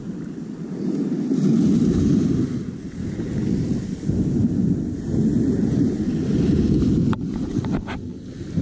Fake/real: real